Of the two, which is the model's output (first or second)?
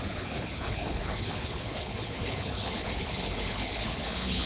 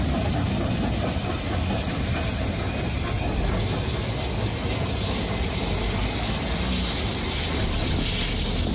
first